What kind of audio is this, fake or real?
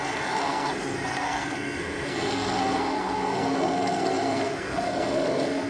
fake